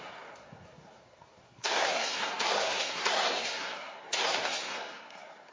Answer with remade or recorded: remade